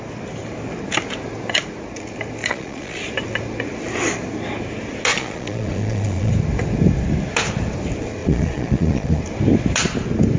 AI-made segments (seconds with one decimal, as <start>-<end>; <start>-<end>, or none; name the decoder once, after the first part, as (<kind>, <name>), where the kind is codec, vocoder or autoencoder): 2.4-3.0 (vocoder, Vocos); 5.1-6.3; 8.2-9.2